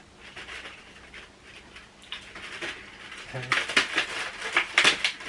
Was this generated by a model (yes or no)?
no